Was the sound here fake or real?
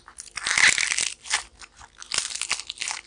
real